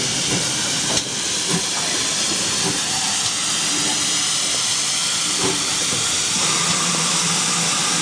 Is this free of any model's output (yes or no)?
yes